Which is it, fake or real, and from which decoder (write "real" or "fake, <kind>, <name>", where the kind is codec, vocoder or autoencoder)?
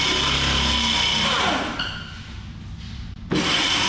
real